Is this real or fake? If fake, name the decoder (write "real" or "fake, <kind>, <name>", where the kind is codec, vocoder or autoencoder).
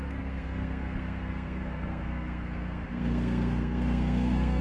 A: fake, codec, SNAC